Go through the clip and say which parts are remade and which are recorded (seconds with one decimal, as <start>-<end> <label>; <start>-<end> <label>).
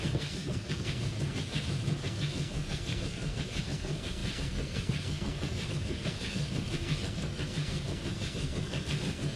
0.0-9.4 remade